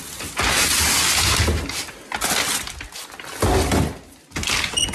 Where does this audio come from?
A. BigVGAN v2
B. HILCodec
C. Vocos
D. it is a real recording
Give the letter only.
D